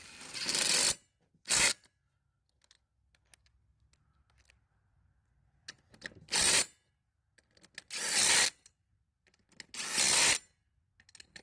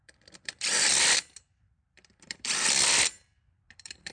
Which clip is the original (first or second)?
first